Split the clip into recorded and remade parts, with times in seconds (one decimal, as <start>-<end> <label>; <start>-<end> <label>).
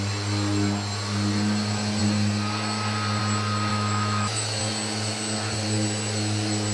0.0-3.7 recorded; 3.7-4.6 remade; 4.6-6.7 recorded